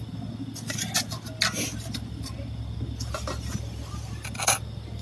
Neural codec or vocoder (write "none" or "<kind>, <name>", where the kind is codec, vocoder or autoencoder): none